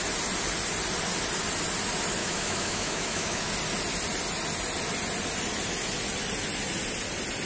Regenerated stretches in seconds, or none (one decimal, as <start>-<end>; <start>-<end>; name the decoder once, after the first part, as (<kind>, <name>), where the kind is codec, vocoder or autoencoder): 2.2-3.5 (autoencoder, DAC-VAE)